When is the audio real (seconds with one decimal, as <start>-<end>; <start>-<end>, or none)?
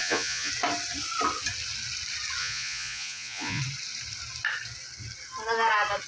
0.5-2.4; 3.6-6.1